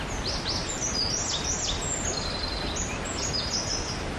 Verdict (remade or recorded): recorded